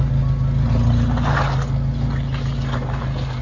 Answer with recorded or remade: recorded